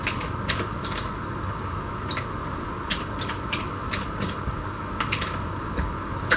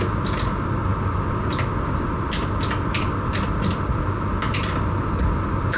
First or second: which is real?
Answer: second